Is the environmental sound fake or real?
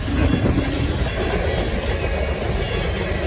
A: real